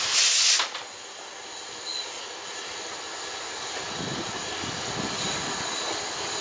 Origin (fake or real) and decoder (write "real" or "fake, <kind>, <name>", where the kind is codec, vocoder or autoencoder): real